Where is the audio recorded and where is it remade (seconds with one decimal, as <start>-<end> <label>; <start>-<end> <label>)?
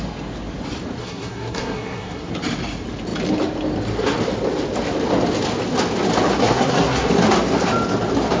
0.0-1.0 recorded; 1.0-2.3 remade; 2.3-6.4 recorded; 6.4-7.1 remade; 7.1-8.4 recorded